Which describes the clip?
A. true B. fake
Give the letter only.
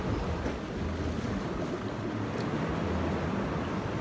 A